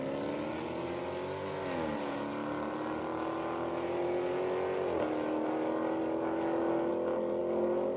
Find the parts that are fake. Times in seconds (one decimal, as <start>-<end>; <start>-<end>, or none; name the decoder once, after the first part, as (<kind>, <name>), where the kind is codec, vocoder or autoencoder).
none